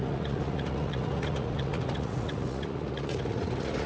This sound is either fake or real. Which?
fake